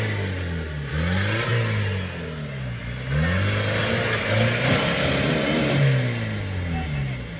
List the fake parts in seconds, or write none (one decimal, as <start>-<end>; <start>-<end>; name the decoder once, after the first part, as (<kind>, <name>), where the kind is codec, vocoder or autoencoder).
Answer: none